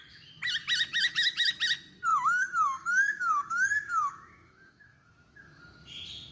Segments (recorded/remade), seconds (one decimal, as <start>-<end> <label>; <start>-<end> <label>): 0.0-0.9 recorded; 0.9-1.6 remade; 1.6-2.1 recorded; 2.1-5.6 remade; 5.6-6.3 recorded